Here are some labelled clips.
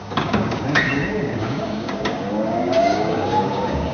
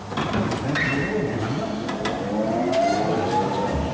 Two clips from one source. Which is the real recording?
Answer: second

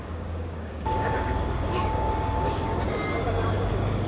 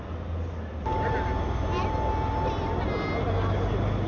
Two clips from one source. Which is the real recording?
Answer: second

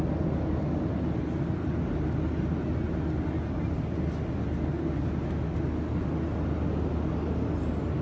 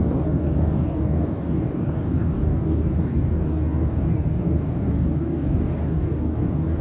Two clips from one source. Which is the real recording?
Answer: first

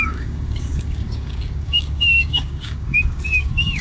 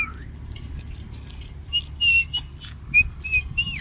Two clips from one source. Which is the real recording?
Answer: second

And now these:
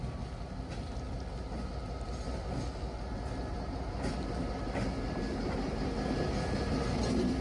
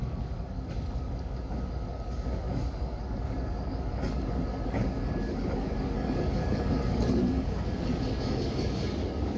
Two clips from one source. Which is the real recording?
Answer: first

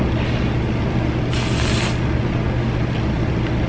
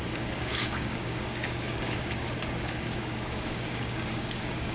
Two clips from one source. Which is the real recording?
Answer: first